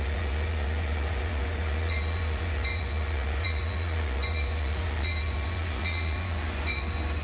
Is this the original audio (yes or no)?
no